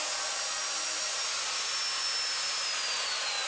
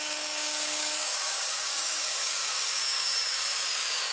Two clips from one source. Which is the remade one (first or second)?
second